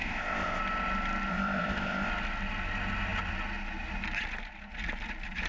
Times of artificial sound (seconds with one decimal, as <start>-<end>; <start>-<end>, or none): 0.0-0.6; 1.3-2.1